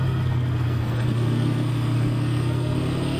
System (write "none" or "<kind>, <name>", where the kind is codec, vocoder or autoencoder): codec, SNAC